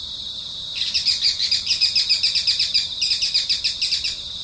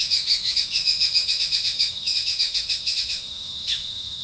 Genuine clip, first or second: first